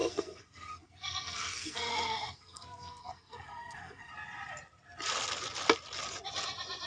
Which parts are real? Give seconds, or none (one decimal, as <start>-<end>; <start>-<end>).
4.1-6.9